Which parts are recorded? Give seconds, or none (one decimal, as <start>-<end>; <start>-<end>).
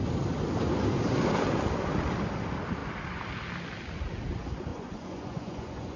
0.0-4.7